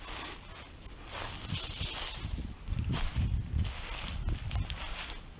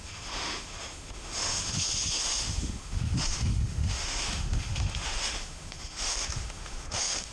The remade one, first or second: second